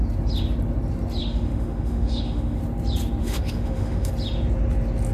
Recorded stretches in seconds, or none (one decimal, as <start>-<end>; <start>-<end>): 0.0-1.2; 2.6-3.2; 4.1-5.1